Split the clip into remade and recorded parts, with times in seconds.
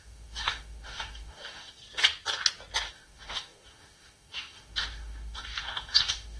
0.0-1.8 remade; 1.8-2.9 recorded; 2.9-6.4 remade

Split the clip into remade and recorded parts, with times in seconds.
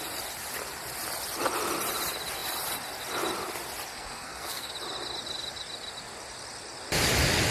0.0-3.9 recorded; 3.9-4.7 remade; 4.7-7.5 recorded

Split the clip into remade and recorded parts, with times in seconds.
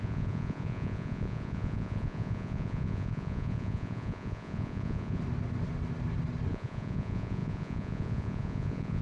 0.0-5.2 remade; 5.2-6.5 recorded; 6.5-9.0 remade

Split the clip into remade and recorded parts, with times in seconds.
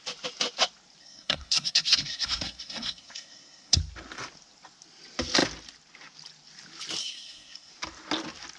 0.0-1.0 recorded; 1.0-3.8 remade; 3.8-7.0 recorded; 7.0-7.7 remade; 7.7-8.6 recorded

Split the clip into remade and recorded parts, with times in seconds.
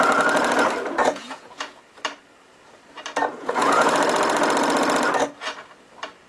0.0-1.0 recorded; 1.0-1.8 remade; 1.8-3.3 recorded; 3.3-3.9 remade; 3.9-6.3 recorded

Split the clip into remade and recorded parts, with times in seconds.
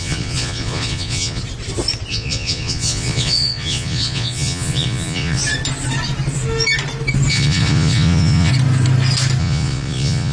0.0-1.4 remade; 1.4-2.1 recorded; 2.1-5.4 remade; 5.4-7.3 recorded; 7.3-8.5 remade; 8.5-9.4 recorded; 9.4-10.3 remade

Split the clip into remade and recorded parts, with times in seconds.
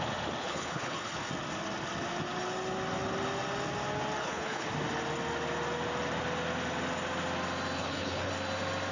0.0-0.4 recorded; 0.4-1.3 remade; 1.3-4.2 recorded; 4.2-4.7 remade; 4.7-7.8 recorded; 7.8-8.3 remade; 8.3-8.9 recorded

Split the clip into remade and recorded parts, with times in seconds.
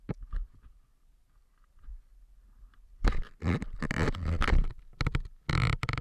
0.0-1.9 remade; 1.9-5.5 recorded; 5.5-6.0 remade